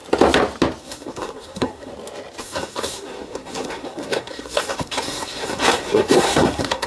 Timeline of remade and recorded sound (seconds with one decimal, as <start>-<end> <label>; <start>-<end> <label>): 0.0-0.8 recorded; 0.8-1.9 remade; 1.9-2.4 recorded; 2.4-6.9 remade